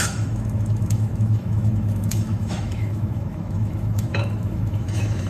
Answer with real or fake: fake